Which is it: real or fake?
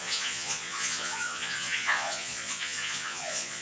fake